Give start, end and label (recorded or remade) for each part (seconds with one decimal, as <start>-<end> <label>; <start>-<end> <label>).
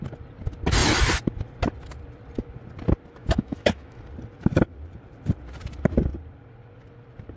0.0-3.2 recorded; 3.2-4.0 remade; 4.0-7.4 recorded